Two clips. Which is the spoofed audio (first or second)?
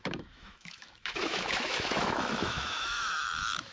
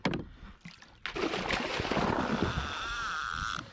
first